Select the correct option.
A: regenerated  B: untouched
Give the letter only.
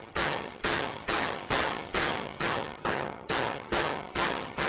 A